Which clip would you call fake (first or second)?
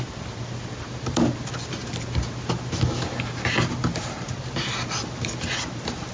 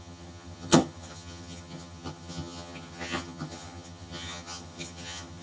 second